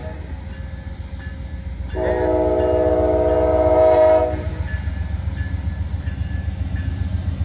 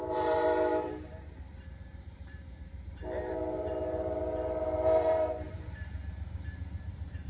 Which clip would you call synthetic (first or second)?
second